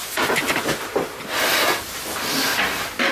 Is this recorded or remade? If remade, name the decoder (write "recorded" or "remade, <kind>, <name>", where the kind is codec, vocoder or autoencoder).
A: recorded